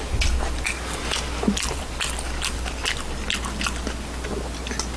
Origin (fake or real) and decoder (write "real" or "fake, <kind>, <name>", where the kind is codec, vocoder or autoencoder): real